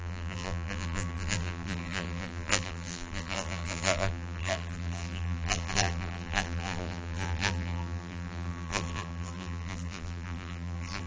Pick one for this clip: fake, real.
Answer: fake